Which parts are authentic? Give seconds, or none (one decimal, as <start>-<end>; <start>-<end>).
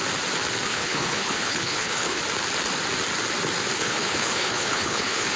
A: 0.0-0.7; 2.2-3.8